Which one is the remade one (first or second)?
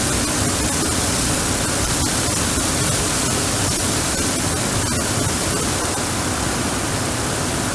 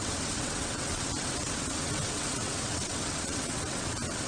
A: second